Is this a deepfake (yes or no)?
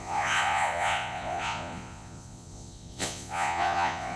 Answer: yes